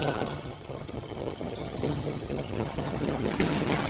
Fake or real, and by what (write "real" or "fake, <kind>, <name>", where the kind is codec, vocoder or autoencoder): fake, vocoder, HiFi-GAN